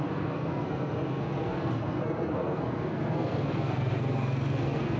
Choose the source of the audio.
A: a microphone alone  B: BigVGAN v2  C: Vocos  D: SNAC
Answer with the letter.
D